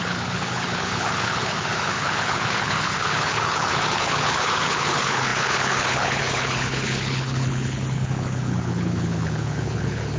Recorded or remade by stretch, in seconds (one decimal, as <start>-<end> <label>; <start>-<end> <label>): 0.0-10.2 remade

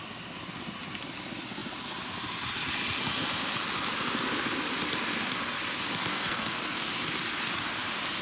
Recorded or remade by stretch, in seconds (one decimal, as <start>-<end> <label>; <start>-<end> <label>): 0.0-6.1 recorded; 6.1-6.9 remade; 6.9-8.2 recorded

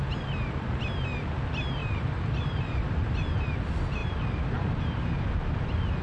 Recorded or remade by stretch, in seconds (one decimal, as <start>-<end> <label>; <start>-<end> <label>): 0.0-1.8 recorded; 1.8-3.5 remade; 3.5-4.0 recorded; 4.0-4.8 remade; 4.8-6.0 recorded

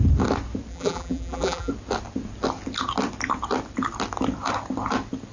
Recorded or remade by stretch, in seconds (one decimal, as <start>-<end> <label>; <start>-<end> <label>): 0.0-0.7 recorded; 0.7-1.7 remade; 1.7-5.3 recorded

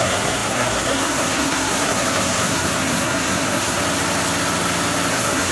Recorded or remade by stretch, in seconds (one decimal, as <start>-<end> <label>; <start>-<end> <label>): 0.0-3.8 remade; 3.8-5.1 recorded; 5.1-5.5 remade